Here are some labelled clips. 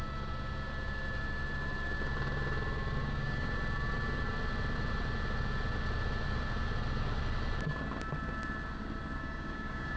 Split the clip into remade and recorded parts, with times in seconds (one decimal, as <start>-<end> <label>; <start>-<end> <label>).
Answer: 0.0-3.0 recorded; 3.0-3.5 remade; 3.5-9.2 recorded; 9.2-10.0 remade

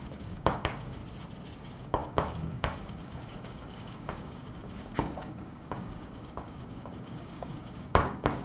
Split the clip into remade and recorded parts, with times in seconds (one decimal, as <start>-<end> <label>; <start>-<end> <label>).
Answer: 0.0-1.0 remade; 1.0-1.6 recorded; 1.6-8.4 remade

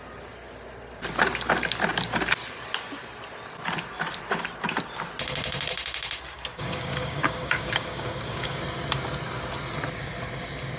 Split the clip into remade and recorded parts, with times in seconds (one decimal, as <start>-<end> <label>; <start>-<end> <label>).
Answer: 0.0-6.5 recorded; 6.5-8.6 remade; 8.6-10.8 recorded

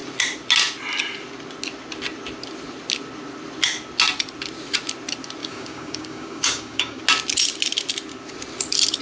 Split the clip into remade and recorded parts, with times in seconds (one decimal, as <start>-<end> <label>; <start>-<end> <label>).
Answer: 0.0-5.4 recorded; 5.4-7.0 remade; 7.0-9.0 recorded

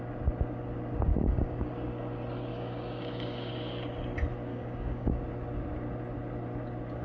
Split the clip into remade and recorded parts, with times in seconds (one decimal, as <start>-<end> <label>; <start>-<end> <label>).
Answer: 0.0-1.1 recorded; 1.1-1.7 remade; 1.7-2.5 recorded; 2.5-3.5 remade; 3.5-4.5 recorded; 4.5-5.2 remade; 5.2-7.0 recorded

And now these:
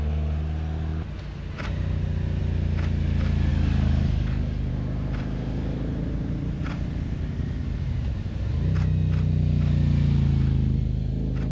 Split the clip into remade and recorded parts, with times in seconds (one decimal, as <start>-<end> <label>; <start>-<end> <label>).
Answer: 0.0-3.5 recorded; 3.5-4.7 remade; 4.7-11.5 recorded